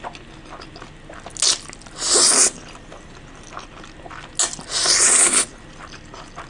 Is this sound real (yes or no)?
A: yes